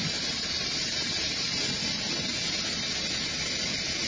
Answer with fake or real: real